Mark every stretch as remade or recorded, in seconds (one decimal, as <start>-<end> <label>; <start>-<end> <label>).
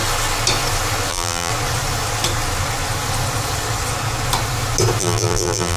0.0-1.1 recorded; 1.1-1.5 remade; 1.5-5.0 recorded; 5.0-5.8 remade